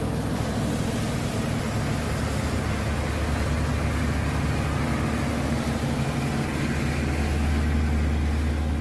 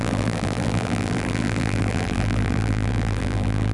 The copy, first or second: second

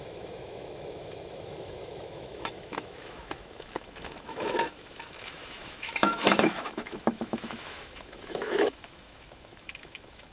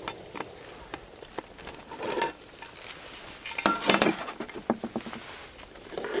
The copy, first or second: first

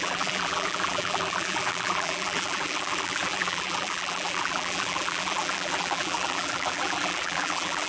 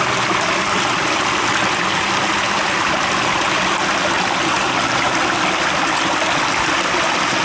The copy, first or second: first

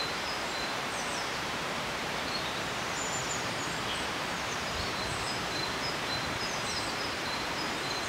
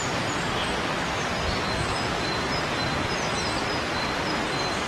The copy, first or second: first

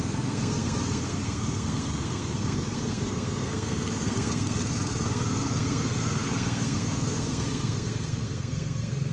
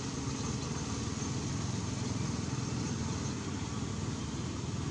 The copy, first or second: first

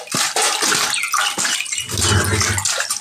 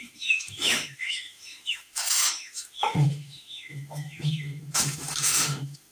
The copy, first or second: second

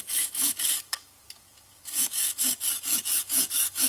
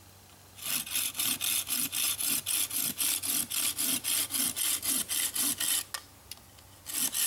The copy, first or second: first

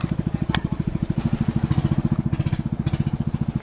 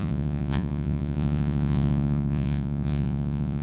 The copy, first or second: second